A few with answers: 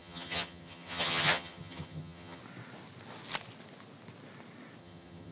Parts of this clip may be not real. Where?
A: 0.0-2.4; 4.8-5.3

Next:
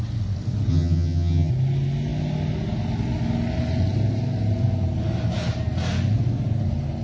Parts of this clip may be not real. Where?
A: 0.7-1.5

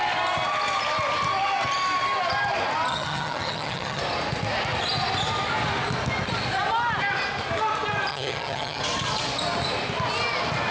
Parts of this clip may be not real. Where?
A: 2.9-4.0; 8.1-8.8

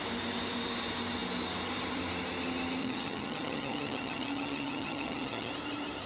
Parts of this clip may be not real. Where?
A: 2.8-5.5